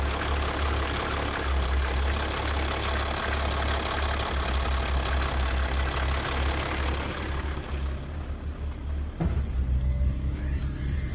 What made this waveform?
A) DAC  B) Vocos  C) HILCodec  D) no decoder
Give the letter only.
D